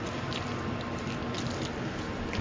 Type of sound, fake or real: real